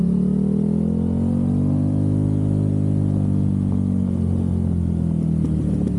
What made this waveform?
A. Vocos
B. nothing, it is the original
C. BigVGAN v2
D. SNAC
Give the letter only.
B